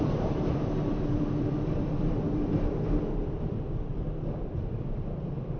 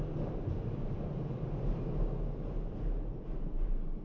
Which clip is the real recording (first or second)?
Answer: second